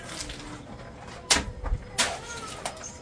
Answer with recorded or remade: recorded